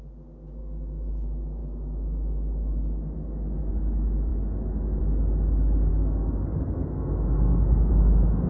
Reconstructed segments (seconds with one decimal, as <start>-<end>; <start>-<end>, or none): 0.6-1.1; 5.9-7.9